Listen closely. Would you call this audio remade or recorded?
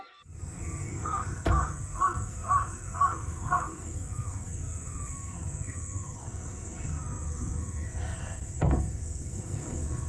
remade